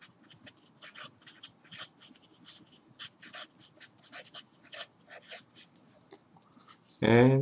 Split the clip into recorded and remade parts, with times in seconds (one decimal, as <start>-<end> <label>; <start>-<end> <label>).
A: 0.0-7.4 recorded